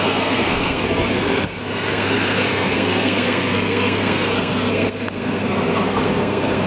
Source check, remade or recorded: remade